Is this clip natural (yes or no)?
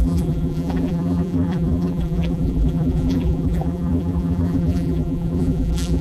no